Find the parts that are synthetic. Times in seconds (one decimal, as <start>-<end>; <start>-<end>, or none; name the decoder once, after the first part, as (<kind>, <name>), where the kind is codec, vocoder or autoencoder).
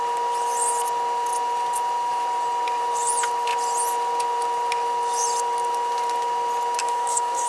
6.8-7.5 (codec, DAC)